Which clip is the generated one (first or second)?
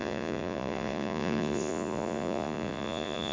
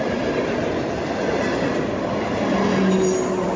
first